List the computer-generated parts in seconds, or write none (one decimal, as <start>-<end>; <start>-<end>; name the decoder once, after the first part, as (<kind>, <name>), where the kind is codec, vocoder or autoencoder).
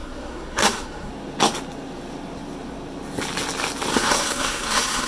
0.0-1.1 (codec, SNAC); 3.9-5.1